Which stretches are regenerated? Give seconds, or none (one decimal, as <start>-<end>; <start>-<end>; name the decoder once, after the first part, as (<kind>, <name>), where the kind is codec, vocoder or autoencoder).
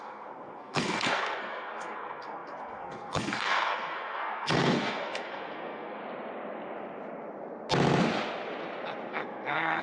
0.0-6.0 (codec, SNAC); 9.1-9.8